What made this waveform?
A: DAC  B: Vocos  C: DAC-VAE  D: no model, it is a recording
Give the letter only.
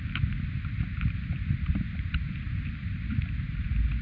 D